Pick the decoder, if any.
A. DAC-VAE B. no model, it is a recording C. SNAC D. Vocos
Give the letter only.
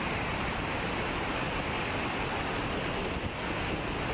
B